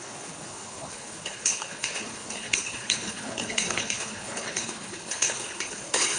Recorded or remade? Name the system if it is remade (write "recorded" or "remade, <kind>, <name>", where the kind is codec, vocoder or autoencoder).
remade, codec, HILCodec